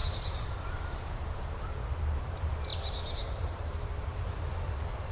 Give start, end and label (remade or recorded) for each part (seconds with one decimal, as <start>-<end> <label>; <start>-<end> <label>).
0.0-1.2 remade; 1.2-2.7 recorded; 2.7-4.2 remade; 4.2-5.1 recorded